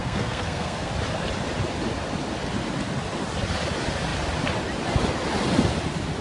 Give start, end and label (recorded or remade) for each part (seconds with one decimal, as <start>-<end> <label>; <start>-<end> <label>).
0.0-0.9 remade; 0.9-6.2 recorded